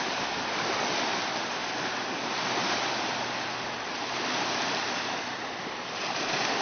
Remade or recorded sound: recorded